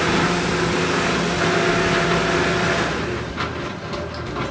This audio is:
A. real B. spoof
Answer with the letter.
A